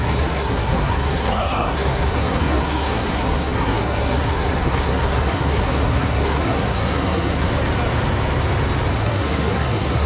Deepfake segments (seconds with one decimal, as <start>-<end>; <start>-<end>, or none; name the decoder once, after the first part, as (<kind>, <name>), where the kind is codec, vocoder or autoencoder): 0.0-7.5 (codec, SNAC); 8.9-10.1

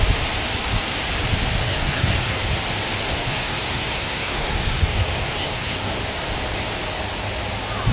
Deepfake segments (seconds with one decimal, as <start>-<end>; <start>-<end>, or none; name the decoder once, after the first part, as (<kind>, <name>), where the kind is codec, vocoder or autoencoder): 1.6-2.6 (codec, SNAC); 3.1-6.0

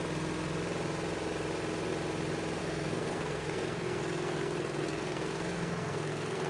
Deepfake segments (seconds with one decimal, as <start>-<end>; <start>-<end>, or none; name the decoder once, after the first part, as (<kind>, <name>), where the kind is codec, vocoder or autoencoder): 2.6-6.5 (codec, SNAC)

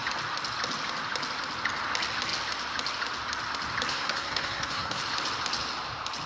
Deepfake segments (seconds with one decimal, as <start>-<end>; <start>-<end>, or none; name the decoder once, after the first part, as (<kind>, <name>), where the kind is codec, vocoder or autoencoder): 3.9-5.0 (codec, SNAC)